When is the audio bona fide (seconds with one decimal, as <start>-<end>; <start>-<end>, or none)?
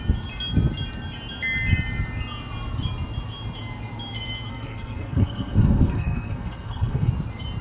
0.0-4.5; 7.1-7.6